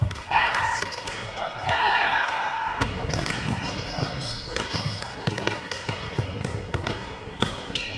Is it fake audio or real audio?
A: fake